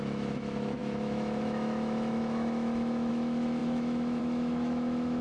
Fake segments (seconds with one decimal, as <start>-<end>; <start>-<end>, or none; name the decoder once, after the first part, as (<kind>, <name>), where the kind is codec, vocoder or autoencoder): 0.0-5.2 (autoencoder, DAC-VAE)